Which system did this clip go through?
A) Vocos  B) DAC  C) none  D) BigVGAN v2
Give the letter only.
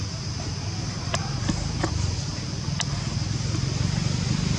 C